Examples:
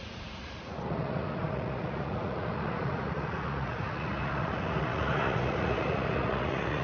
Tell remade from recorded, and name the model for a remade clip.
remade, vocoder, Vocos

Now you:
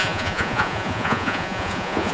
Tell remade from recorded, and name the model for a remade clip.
remade, vocoder, Vocos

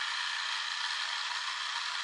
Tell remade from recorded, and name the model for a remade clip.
recorded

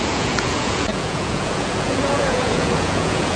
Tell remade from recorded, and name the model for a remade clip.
remade, vocoder, Vocos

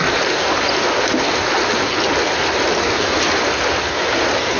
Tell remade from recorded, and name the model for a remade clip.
recorded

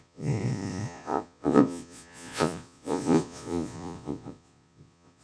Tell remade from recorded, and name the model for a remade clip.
remade, vocoder, Vocos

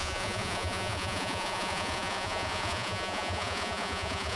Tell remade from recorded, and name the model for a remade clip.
remade, vocoder, Vocos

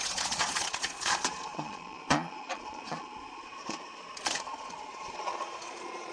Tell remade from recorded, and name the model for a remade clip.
remade, vocoder, Vocos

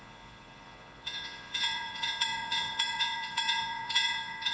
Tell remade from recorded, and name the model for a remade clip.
remade, vocoder, Vocos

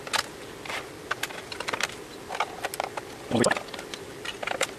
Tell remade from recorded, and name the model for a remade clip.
recorded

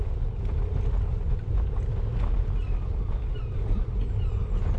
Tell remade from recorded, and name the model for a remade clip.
recorded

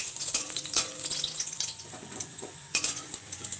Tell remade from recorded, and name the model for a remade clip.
remade, vocoder, Vocos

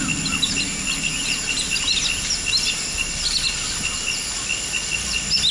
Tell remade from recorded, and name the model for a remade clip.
recorded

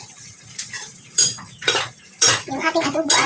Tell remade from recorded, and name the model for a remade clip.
remade, vocoder, Vocos